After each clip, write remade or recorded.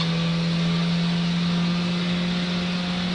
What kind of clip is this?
recorded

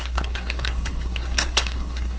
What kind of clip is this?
remade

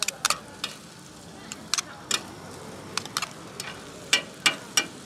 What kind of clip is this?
recorded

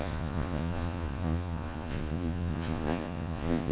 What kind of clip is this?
remade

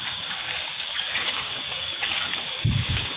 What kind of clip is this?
remade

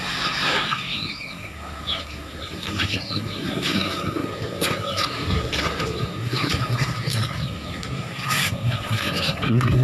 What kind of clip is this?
remade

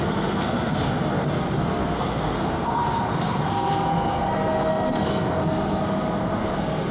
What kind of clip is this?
remade